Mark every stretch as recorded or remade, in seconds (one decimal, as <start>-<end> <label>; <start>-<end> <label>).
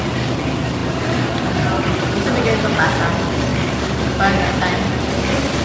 0.0-0.8 recorded; 0.8-3.0 remade; 3.0-5.6 recorded